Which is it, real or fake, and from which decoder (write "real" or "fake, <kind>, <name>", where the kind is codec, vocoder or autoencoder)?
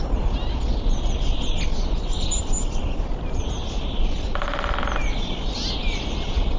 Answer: real